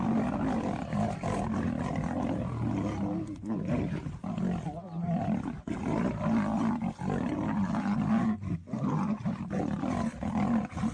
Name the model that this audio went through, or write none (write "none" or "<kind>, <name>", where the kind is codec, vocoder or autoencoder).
none